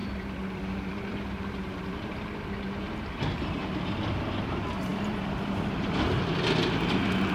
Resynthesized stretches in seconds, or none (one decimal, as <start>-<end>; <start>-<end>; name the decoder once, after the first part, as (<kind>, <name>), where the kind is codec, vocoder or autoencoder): 0.0-2.2 (vocoder, BigVGAN v2); 4.9-5.5